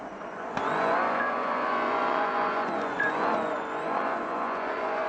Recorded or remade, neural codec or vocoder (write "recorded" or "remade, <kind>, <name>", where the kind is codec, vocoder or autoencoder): remade, vocoder, Vocos